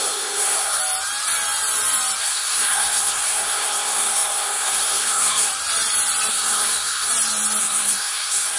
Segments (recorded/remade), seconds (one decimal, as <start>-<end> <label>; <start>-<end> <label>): 0.0-0.8 remade; 0.8-2.2 recorded; 2.2-5.5 remade; 5.5-6.3 recorded; 6.3-7.1 remade; 7.1-7.6 recorded; 7.6-8.6 remade